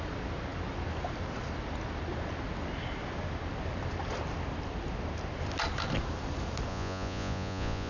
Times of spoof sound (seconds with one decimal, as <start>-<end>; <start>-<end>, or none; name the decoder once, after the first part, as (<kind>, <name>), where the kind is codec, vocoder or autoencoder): 6.7-7.9 (vocoder, Vocos)